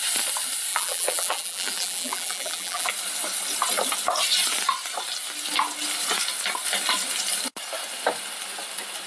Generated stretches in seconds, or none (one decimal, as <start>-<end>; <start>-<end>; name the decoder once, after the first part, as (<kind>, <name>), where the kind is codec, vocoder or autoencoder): 0.7-2.9 (vocoder, BigVGAN v2)